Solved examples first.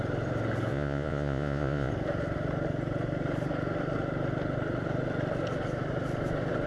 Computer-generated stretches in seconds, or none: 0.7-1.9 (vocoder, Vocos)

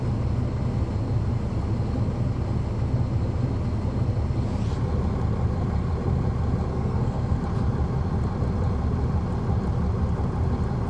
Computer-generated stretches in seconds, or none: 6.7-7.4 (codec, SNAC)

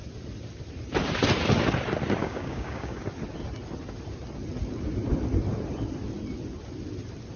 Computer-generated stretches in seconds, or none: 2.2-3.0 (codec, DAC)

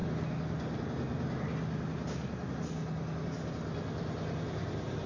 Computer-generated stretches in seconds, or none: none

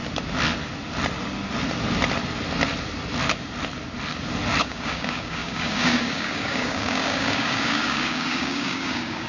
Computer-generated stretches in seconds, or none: 4.6-9.3 (codec, DAC)

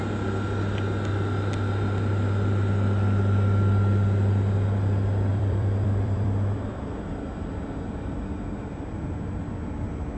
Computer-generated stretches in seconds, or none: 5.3-6.8 (vocoder, BigVGAN v2)